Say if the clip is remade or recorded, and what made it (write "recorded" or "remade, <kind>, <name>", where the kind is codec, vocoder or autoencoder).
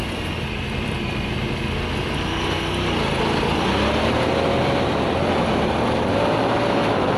recorded